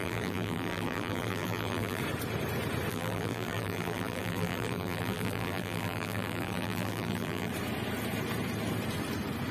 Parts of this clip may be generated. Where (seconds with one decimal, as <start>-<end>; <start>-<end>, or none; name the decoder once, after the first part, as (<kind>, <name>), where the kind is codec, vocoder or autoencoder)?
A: 0.0-2.0 (vocoder, BigVGAN v2); 2.9-7.5